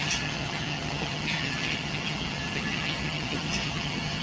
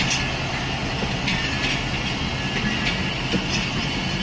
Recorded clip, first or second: second